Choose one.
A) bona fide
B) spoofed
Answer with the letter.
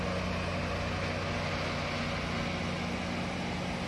A